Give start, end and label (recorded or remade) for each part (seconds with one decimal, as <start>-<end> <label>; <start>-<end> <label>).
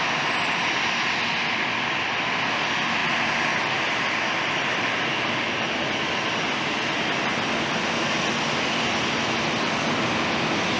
0.0-10.8 recorded